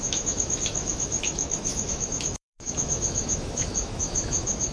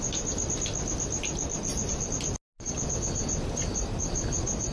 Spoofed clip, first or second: first